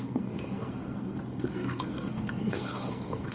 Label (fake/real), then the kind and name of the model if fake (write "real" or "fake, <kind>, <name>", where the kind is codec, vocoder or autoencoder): fake, codec, SNAC